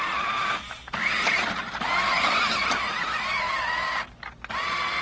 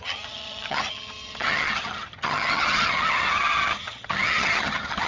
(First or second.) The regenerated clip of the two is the second